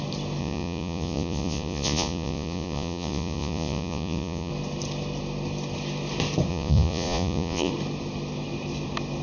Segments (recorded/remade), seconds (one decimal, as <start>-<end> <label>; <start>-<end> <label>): 0.0-0.4 recorded; 0.4-4.5 remade; 4.5-6.5 recorded; 6.5-7.7 remade; 7.7-9.2 recorded